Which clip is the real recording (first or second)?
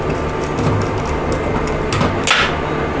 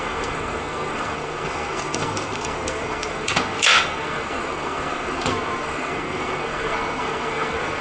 first